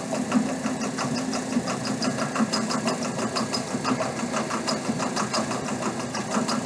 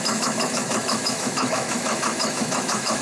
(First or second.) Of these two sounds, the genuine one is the first